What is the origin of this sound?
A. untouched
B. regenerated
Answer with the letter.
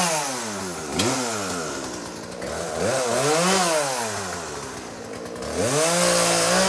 A